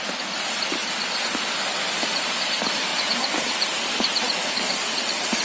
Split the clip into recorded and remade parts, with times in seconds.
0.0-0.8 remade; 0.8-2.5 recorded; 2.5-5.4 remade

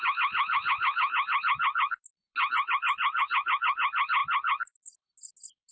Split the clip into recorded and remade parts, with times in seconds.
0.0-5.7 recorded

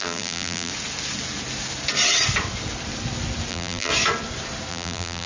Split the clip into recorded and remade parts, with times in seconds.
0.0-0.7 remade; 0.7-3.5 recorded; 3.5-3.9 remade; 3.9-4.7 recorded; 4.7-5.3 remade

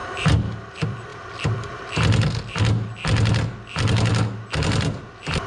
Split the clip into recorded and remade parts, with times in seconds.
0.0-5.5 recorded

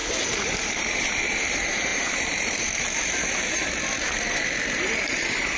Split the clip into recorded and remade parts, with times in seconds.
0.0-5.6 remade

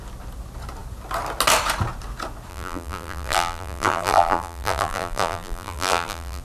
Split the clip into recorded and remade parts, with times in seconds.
0.0-2.5 recorded; 2.5-6.4 remade

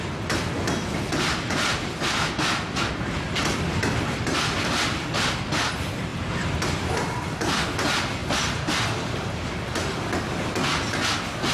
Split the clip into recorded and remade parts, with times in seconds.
0.0-6.1 recorded; 6.1-6.9 remade; 6.9-11.5 recorded